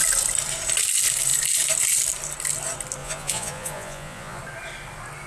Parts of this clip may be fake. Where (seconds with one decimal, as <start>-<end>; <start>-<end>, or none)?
3.0-4.4